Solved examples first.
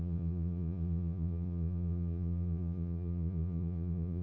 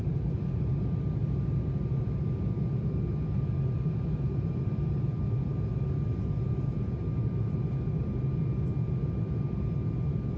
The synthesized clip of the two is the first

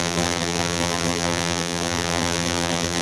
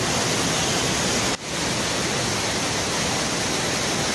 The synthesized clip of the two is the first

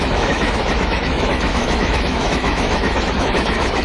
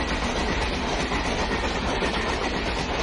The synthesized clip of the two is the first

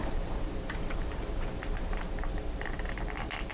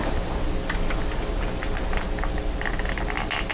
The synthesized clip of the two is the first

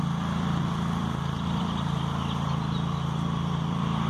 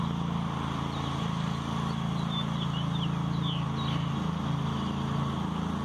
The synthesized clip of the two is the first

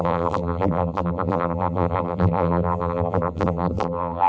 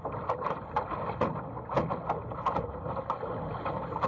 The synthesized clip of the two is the first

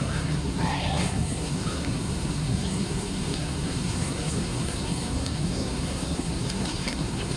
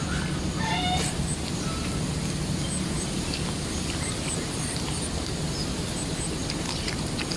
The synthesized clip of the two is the first